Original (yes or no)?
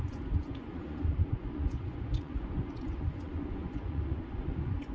no